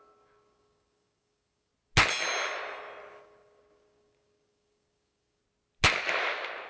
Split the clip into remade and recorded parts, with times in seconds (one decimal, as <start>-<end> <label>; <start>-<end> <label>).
0.0-1.7 remade; 1.7-3.1 recorded; 3.1-5.4 remade; 5.4-6.7 recorded